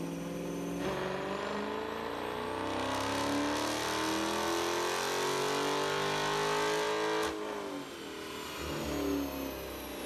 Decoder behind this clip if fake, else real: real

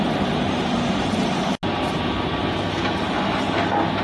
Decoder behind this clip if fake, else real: real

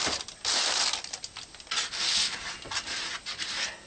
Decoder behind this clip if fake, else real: real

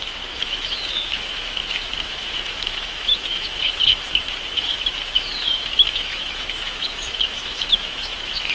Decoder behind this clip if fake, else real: fake, autoencoder, DAC-VAE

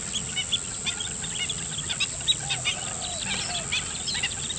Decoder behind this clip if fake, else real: real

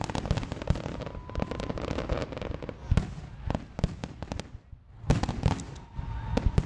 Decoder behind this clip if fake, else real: real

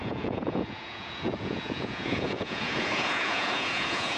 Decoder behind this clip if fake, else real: fake, vocoder, Vocos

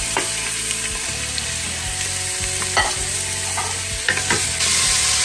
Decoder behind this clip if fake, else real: real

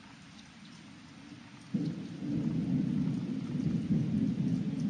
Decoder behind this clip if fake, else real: real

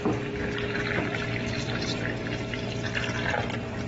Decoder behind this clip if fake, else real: real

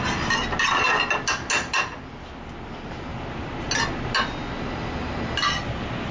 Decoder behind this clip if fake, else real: real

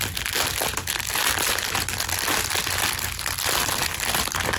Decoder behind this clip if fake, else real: real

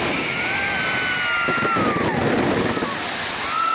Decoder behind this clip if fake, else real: real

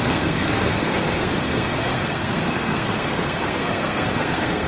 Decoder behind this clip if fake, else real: fake, codec, SNAC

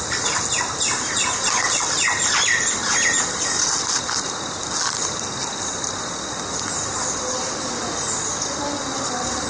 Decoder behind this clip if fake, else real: real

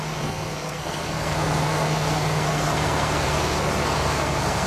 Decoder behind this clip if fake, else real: fake, codec, SNAC